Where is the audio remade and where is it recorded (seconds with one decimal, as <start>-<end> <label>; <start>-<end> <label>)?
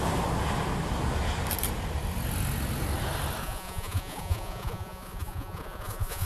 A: 0.0-3.4 recorded; 3.4-6.3 remade